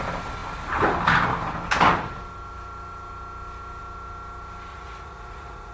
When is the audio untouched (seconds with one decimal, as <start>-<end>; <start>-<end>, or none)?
0.0-4.7